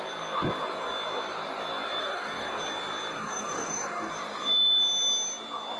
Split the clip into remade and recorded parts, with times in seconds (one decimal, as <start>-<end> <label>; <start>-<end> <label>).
0.0-2.0 recorded; 2.0-2.6 remade; 2.6-3.1 recorded; 3.1-4.1 remade; 4.1-5.8 recorded